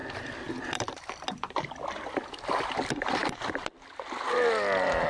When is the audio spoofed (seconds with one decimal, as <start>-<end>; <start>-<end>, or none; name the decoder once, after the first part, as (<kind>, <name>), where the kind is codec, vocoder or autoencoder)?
1.5-3.2 (vocoder, BigVGAN v2)